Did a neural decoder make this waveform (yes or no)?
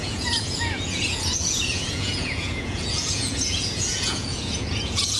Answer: yes